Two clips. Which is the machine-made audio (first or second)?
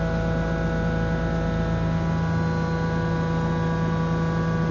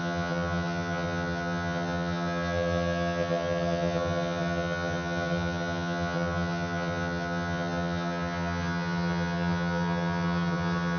second